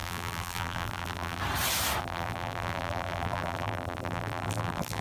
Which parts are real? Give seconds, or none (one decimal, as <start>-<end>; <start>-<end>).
1.4-2.0